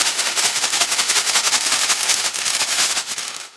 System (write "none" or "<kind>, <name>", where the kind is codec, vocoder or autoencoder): autoencoder, DAC-VAE